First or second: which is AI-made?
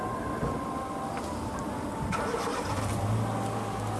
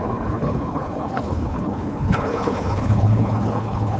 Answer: second